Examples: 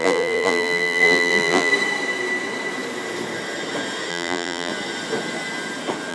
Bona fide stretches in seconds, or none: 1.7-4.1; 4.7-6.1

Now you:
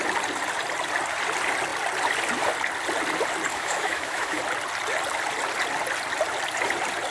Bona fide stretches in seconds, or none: 0.0-3.5; 4.4-7.1

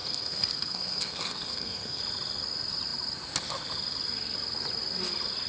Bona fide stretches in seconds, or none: 2.0-5.5